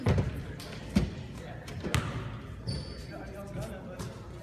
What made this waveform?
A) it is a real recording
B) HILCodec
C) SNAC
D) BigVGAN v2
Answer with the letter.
A